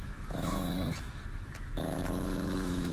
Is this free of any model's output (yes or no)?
no